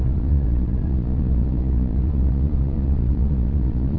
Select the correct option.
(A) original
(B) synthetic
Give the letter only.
B